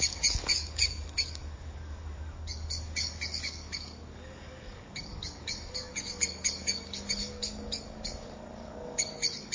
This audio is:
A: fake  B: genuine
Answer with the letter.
A